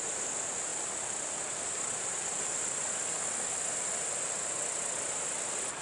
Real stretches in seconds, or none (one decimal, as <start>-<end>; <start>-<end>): 0.0-5.8